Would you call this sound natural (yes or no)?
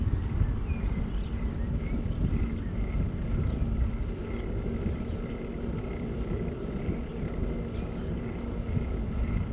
yes